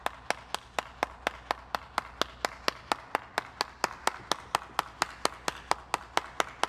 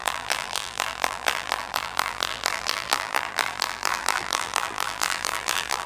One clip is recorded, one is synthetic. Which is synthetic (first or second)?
second